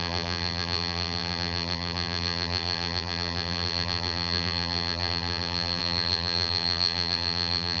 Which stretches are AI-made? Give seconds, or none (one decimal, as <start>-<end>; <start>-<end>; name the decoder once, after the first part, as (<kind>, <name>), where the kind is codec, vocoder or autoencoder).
0.0-7.8 (vocoder, BigVGAN v2)